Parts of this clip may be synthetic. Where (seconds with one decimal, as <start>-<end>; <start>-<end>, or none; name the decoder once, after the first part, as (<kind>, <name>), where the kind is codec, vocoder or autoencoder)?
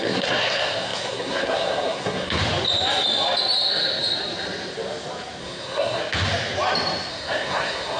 0.0-2.4 (codec, SNAC); 5.4-6.0; 7.1-8.0